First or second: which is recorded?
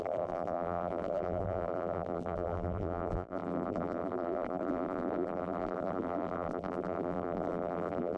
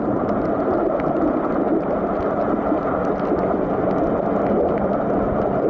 second